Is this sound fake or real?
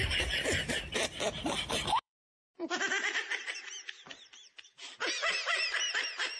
fake